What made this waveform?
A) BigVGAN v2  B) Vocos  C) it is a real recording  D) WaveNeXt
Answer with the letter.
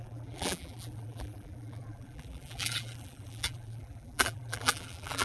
A